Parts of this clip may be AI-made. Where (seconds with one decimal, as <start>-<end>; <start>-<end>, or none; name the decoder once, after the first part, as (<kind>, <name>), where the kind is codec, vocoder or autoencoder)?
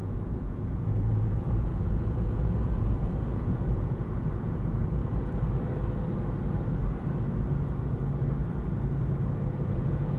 0.0-5.0 (vocoder, Vocos); 9.6-10.2